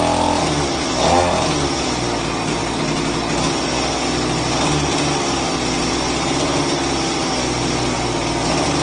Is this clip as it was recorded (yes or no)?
yes